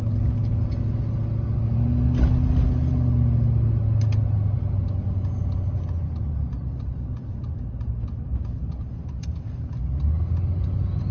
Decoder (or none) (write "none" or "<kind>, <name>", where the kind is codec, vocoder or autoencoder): none